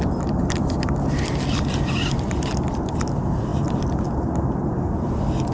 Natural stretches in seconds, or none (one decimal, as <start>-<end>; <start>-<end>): 0.0-5.5